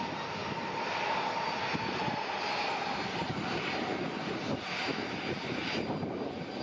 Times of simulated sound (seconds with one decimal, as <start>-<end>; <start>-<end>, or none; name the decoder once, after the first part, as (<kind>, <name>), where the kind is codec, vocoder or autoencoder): 4.9-5.5 (vocoder, BigVGAN v2)